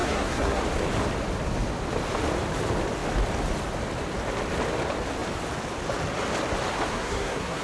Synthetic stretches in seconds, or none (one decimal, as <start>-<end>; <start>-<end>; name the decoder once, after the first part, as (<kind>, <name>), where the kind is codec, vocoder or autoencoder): 0.0-0.6 (codec, SNAC); 6.9-7.6